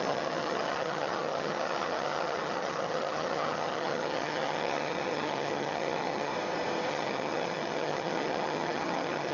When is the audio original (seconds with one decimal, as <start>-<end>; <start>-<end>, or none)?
6.3-6.9